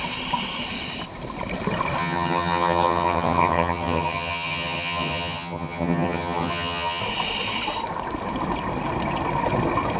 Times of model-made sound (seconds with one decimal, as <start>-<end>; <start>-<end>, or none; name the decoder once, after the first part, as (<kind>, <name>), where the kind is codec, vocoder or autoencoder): 2.0-7.0 (vocoder, HiFi-GAN)